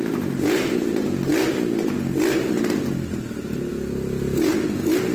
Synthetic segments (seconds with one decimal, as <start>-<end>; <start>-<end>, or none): none